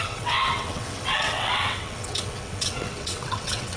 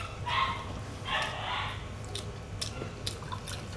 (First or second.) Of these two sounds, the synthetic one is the first